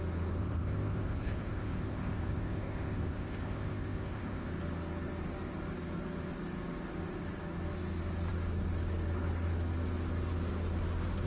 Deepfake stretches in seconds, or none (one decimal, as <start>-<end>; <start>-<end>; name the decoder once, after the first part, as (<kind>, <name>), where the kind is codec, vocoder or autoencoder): 0.4-4.5 (codec, ZipCodec)